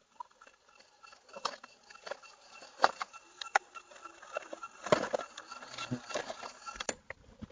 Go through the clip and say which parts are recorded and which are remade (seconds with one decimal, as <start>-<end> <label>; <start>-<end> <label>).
0.0-7.5 recorded